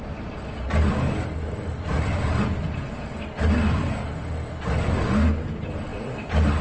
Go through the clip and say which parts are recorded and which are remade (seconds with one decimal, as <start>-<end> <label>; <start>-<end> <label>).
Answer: 0.0-6.6 recorded